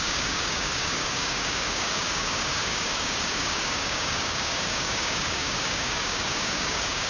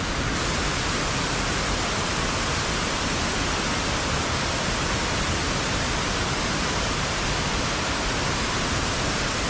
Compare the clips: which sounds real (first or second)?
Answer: second